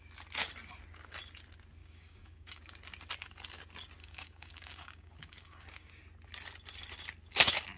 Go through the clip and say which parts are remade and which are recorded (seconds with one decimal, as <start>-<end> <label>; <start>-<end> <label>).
0.0-1.8 recorded; 1.8-2.6 remade; 2.6-4.0 recorded; 4.0-6.0 remade; 6.0-7.8 recorded